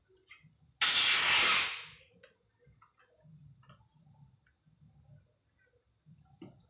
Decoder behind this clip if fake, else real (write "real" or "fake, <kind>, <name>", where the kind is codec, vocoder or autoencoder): real